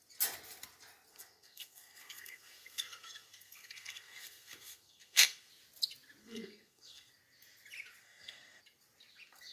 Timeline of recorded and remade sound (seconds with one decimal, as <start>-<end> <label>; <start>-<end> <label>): 0.0-1.1 recorded; 1.1-5.5 remade; 5.5-6.2 recorded; 6.2-7.1 remade; 7.1-8.0 recorded; 8.0-8.6 remade; 8.6-9.5 recorded